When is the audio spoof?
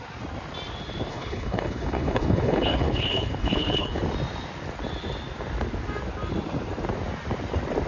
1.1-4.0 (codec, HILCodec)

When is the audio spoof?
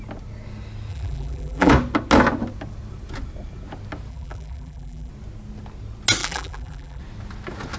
0.9-1.7 (vocoder, BigVGAN v2); 4.1-5.1; 6.2-7.0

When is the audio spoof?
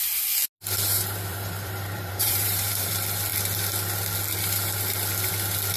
1.3-2.9 (vocoder, BigVGAN v2)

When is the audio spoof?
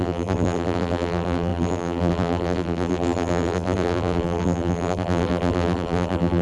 0.0-6.4 (vocoder, BigVGAN v2)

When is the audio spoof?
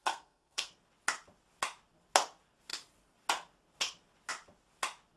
0.0-0.7 (codec, SNAC)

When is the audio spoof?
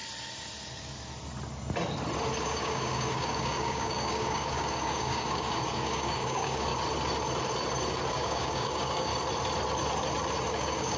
2.4-6.7 (codec, DAC); 8.1-9.1; 10.5-11.0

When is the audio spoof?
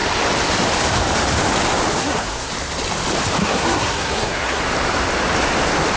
2.0-2.5 (codec, SNAC); 3.4-4.6